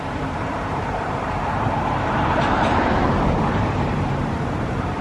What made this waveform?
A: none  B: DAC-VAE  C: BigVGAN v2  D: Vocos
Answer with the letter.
C